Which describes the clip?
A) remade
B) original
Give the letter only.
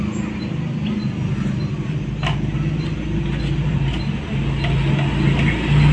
B